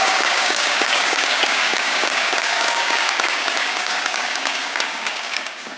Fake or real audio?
fake